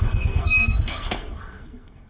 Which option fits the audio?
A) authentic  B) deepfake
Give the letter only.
B